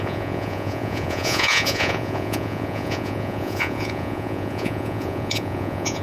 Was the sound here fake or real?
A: fake